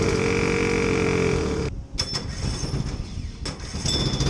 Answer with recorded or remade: recorded